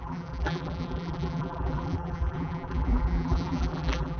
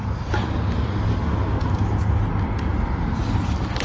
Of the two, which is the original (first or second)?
second